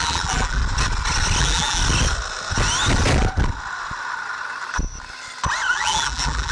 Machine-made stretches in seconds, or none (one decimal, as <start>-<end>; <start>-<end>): 0.0-0.6; 1.4-1.8; 5.7-6.5